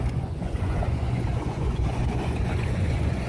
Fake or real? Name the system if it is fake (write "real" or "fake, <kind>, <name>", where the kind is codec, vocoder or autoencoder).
fake, vocoder, Vocos